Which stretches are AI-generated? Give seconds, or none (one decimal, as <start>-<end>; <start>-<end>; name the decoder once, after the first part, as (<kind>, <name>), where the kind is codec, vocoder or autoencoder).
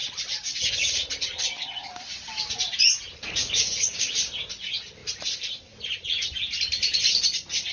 3.4-4.2 (codec, DAC)